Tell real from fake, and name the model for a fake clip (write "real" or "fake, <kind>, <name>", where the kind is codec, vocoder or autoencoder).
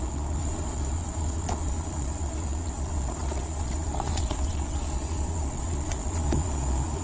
fake, vocoder, Vocos